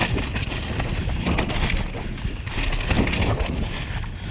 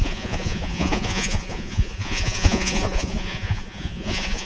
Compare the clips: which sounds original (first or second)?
first